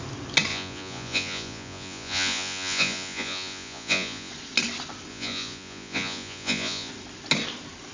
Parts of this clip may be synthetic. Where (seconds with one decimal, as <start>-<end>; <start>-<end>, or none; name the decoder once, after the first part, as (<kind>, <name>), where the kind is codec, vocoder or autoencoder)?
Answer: 0.5-4.3 (vocoder, Vocos); 5.1-6.9